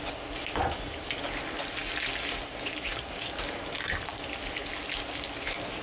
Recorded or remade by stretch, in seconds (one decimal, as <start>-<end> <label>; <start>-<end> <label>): 0.0-5.8 recorded

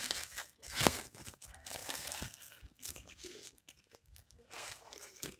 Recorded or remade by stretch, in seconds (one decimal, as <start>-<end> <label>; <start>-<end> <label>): 0.0-5.4 remade

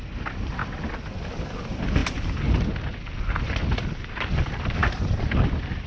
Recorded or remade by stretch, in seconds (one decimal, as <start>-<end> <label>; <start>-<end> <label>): 0.0-0.6 remade; 0.6-1.1 recorded; 1.1-2.0 remade; 2.0-4.1 recorded; 4.1-5.9 remade

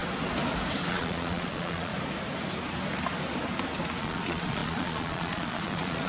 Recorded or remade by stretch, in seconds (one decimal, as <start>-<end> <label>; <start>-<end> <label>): 0.0-0.9 recorded; 0.9-1.9 remade; 1.9-4.0 recorded; 4.0-6.1 remade

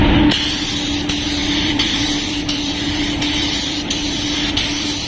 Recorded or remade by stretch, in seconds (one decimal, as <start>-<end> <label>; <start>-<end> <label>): 0.0-1.4 recorded; 1.4-4.5 remade; 4.5-5.1 recorded

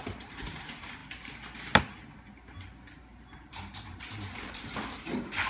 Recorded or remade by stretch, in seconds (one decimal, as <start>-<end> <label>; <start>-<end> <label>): 0.0-1.0 remade; 1.0-3.5 recorded; 3.5-5.5 remade

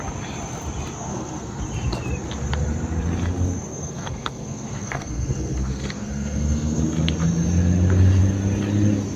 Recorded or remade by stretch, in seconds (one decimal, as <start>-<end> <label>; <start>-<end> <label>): 0.0-1.1 recorded; 1.1-1.6 remade; 1.6-3.7 recorded; 3.7-6.8 remade; 6.8-9.2 recorded